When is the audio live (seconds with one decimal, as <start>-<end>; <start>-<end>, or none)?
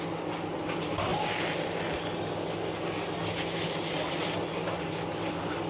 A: 0.0-5.7